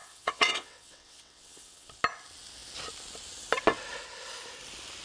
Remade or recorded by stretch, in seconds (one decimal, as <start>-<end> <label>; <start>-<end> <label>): 0.0-2.0 remade; 2.0-5.0 recorded